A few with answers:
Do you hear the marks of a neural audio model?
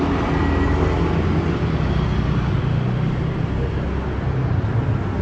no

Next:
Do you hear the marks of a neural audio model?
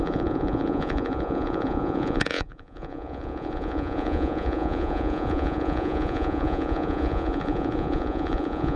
yes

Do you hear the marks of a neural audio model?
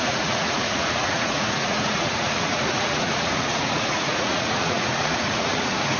yes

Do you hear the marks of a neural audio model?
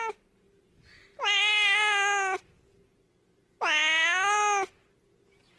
no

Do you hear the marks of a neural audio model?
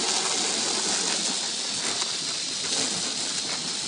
no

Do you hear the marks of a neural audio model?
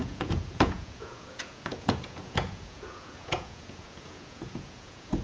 yes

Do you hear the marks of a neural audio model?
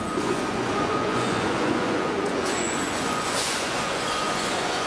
yes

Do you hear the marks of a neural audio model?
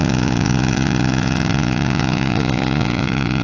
yes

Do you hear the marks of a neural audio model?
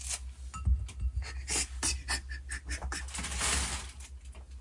no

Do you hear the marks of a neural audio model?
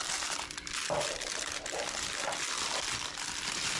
no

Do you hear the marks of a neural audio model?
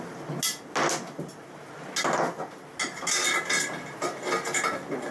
no